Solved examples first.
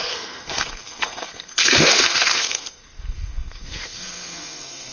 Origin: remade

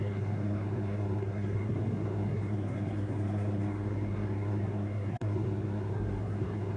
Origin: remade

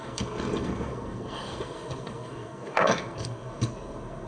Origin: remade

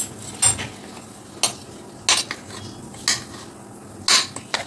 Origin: recorded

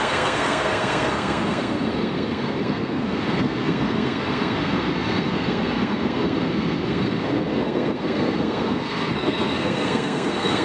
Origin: remade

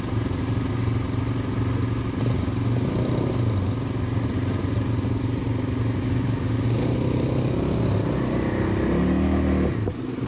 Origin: recorded